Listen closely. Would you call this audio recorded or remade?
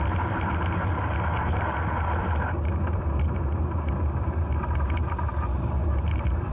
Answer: remade